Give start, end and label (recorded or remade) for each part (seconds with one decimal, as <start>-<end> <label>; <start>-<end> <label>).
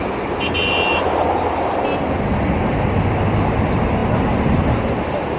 0.0-5.4 recorded